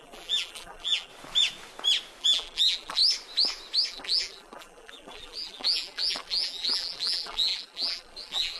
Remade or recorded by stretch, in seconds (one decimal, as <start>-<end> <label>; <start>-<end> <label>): 0.0-1.1 remade; 1.1-2.2 recorded; 2.2-3.0 remade; 3.0-3.9 recorded; 3.9-8.6 remade

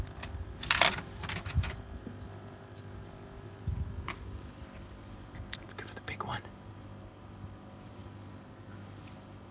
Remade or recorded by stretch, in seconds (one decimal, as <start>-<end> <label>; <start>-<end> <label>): 0.0-9.5 recorded

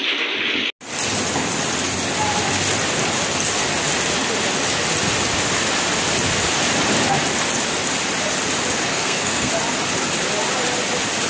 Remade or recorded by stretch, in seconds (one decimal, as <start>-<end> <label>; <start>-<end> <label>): 0.0-8.9 recorded; 8.9-9.5 remade; 9.5-11.3 recorded